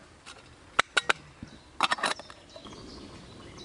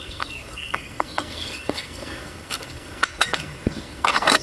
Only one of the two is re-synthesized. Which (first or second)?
second